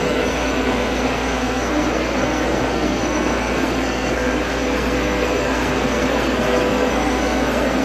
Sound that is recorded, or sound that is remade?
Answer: remade